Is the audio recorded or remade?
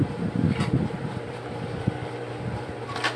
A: remade